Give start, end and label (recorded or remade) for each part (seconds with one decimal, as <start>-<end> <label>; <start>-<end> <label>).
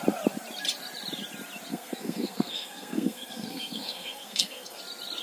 0.0-1.7 recorded; 1.7-4.8 remade; 4.8-5.2 recorded